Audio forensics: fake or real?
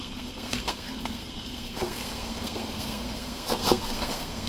fake